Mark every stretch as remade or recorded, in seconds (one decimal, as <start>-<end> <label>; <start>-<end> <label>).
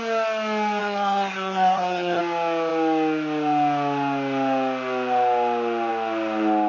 0.0-0.8 recorded; 0.8-2.2 remade; 2.2-6.7 recorded